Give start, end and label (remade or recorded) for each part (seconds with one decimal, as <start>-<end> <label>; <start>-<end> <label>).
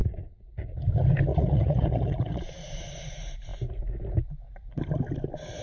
0.0-0.8 remade; 0.8-1.3 recorded; 1.3-2.5 remade; 2.5-5.6 recorded